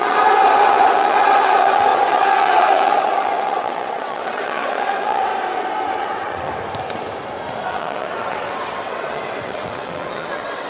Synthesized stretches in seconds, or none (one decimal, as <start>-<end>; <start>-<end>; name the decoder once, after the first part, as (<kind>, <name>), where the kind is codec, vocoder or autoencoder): 0.0-5.3 (vocoder, WaveNeXt); 6.0-6.5; 7.7-10.7